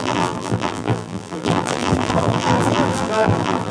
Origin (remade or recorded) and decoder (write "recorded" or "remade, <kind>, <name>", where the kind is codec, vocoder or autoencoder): remade, vocoder, BigVGAN v2